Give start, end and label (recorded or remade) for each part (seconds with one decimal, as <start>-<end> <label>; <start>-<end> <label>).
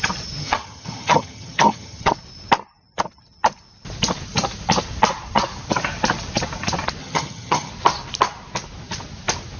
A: 0.0-0.4 recorded; 0.4-2.1 remade; 2.1-7.0 recorded; 7.0-7.7 remade; 7.7-9.6 recorded